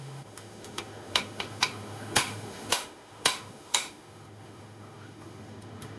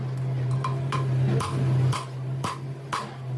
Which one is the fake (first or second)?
first